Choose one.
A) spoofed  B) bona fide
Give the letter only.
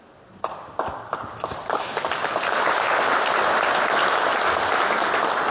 B